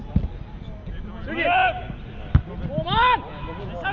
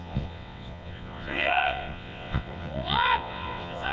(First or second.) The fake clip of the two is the second